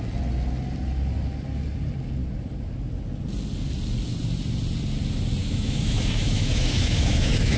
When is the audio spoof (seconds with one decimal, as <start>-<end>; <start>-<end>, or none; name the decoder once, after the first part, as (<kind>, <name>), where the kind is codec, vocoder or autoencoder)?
5.4-7.6 (autoencoder, DAC-VAE)